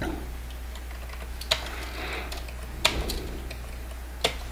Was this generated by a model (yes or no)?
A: no